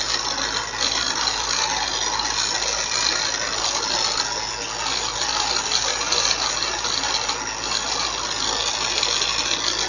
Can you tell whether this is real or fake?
real